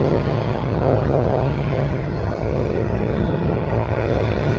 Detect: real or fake fake